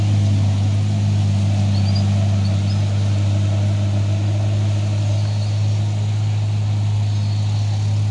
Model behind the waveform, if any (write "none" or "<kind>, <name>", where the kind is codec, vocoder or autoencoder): none